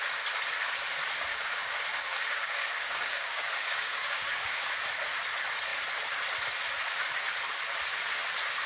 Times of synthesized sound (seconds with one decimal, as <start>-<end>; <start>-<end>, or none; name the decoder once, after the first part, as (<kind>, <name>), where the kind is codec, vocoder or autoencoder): 1.3-4.6 (codec, DAC)